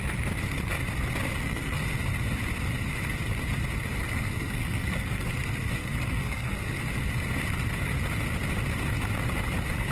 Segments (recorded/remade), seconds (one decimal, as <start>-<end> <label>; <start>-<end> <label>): 0.0-1.3 recorded; 1.3-1.8 remade; 1.8-4.0 recorded; 4.0-5.3 remade; 5.3-5.8 recorded; 5.8-6.8 remade; 6.8-9.9 recorded